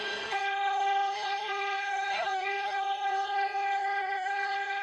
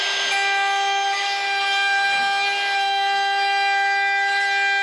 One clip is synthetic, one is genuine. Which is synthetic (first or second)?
first